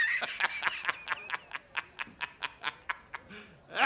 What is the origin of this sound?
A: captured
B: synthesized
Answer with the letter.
A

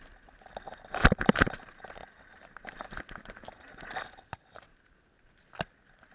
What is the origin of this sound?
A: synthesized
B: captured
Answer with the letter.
B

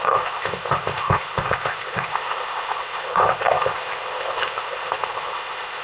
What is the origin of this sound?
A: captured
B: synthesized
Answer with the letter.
B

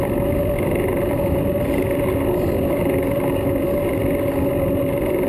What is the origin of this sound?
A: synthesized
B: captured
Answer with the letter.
B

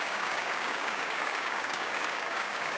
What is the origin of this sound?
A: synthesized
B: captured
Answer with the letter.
A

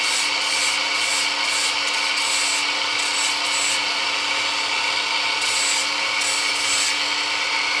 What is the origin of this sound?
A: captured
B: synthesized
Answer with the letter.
A